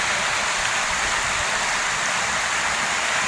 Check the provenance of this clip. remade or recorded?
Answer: recorded